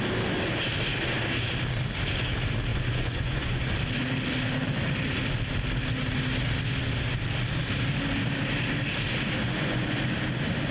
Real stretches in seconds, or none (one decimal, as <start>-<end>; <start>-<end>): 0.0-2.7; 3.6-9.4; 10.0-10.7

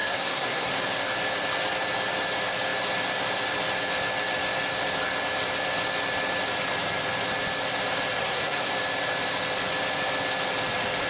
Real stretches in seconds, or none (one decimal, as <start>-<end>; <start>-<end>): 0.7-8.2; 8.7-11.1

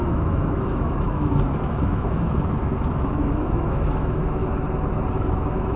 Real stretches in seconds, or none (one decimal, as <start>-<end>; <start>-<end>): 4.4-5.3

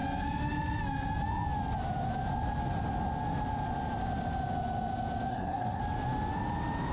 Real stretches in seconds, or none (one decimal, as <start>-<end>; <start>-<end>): 0.0-5.3; 5.8-6.9

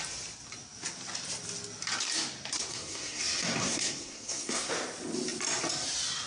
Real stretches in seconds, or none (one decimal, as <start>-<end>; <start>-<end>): 0.0-2.7; 3.2-3.6; 4.7-6.3

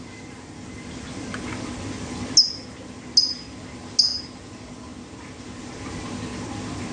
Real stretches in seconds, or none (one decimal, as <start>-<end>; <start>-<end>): 0.0-6.9

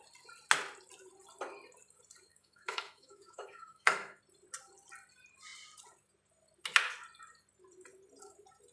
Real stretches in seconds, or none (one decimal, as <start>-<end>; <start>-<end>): 0.0-2.3; 4.2-8.7